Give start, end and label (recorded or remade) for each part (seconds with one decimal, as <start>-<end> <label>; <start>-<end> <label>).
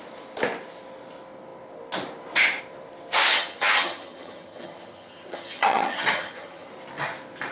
0.0-3.3 recorded; 3.3-6.7 remade; 6.7-7.5 recorded